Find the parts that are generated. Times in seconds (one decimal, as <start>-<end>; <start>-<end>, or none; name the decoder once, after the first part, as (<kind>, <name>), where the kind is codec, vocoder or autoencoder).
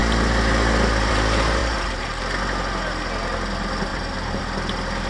1.6-2.2 (vocoder, BigVGAN v2); 3.9-4.4